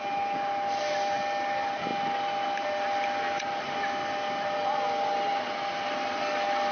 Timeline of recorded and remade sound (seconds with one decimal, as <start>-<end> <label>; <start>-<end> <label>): 0.0-6.7 recorded